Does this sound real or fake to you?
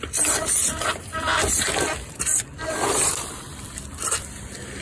fake